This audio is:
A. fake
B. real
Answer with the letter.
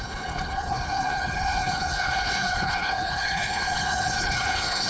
A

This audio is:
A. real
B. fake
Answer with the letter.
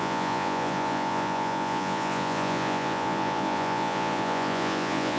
B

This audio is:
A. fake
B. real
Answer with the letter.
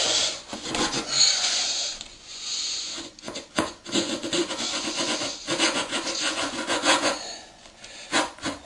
A